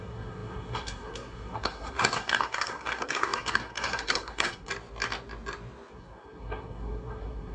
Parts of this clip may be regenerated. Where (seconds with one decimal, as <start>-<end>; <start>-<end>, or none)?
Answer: 0.0-4.7; 5.9-7.5